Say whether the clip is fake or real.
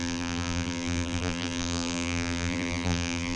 fake